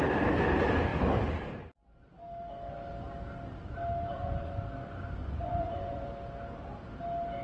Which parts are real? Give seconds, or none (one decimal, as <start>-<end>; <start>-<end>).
0.0-4.1; 4.6-5.2; 6.1-7.4